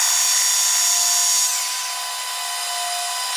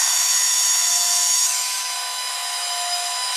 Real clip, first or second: first